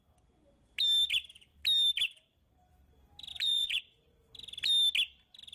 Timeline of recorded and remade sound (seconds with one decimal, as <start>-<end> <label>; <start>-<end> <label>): 0.0-3.3 recorded; 3.3-3.8 remade; 3.8-5.5 recorded